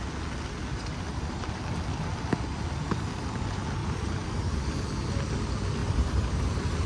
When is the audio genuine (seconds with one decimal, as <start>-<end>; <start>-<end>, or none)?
0.0-0.7; 1.6-3.8; 4.4-5.8